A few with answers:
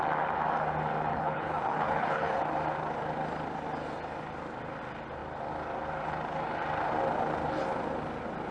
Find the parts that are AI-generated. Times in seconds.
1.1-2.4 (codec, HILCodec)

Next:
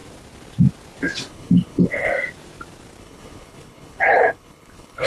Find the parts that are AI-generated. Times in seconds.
1.3-2.1 (codec, HILCodec); 3.0-5.1

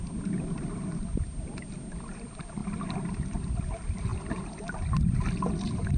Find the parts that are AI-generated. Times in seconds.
none

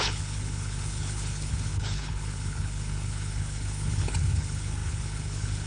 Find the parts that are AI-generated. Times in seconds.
0.0-5.7 (codec, HILCodec)